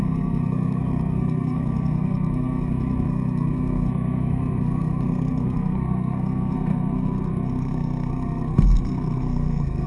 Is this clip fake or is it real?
fake